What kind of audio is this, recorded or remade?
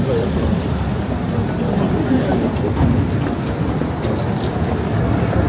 recorded